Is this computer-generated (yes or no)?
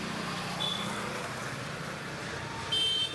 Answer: no